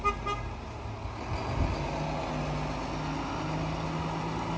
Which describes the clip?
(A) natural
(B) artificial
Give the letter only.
A